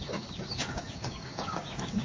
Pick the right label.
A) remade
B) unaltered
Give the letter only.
A